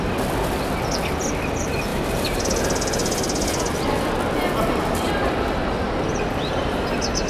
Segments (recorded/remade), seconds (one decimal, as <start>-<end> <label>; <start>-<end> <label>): 0.0-1.9 recorded; 1.9-2.6 remade; 2.6-3.0 recorded; 3.0-3.6 remade; 3.6-7.3 recorded